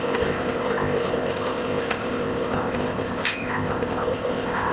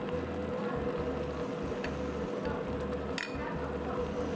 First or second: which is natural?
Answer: second